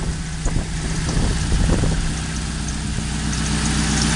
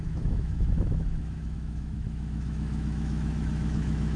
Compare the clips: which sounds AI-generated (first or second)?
second